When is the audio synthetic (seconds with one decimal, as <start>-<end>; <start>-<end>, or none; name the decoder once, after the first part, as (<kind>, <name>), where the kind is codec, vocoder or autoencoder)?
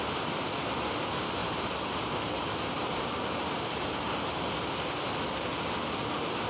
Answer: 1.4-4.4 (vocoder, BigVGAN v2)